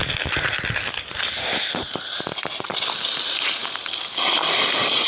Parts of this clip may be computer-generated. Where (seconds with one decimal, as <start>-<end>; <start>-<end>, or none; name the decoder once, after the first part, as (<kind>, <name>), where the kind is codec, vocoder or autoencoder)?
none